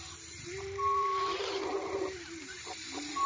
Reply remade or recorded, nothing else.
remade